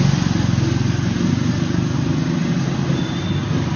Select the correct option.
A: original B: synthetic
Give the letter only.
A